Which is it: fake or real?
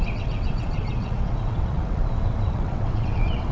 fake